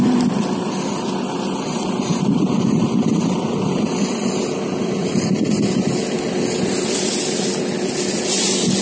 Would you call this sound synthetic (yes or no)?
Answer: no